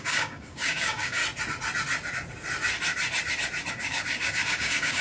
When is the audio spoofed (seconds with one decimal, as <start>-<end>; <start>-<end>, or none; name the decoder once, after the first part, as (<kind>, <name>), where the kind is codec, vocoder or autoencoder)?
0.0-1.2 (codec, DAC); 3.7-5.0